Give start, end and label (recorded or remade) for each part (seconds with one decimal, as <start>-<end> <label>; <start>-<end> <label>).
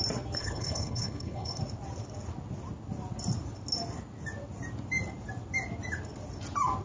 0.0-0.4 recorded; 0.4-1.6 remade; 1.6-6.8 recorded